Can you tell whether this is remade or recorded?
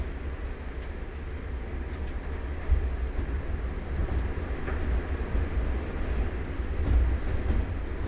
recorded